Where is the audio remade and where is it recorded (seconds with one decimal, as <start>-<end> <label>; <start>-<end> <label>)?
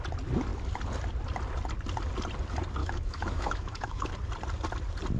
0.0-2.8 recorded; 2.8-4.1 remade; 4.1-5.2 recorded